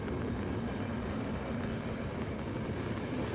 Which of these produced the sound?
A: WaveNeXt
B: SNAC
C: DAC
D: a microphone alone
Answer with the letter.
D